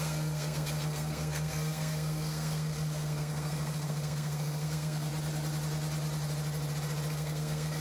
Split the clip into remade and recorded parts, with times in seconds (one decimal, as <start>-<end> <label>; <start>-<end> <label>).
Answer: 0.0-5.1 remade; 5.1-7.1 recorded; 7.1-7.8 remade